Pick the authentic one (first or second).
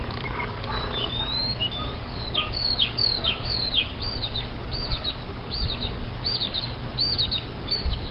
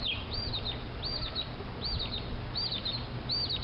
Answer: second